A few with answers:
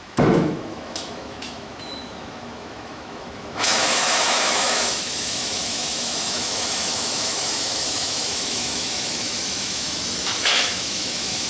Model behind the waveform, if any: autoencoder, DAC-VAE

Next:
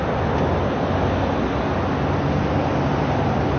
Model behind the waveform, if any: none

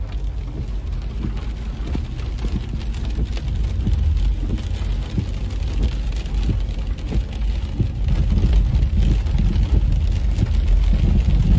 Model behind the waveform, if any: none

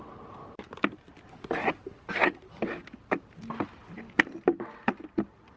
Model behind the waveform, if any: none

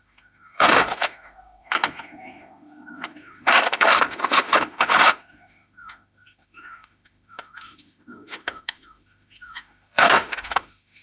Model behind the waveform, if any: autoencoder, DAC-VAE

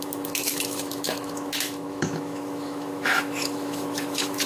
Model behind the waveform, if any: autoencoder, DAC-VAE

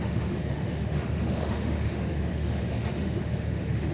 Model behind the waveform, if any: autoencoder, DAC-VAE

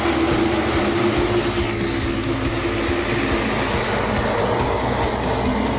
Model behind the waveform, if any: none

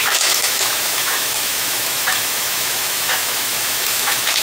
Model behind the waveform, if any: autoencoder, DAC-VAE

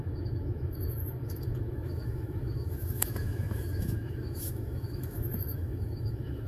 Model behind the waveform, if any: autoencoder, DAC-VAE